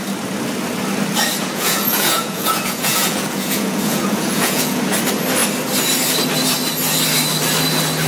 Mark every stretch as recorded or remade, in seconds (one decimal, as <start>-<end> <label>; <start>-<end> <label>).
0.0-1.4 recorded; 1.4-4.8 remade; 4.8-8.1 recorded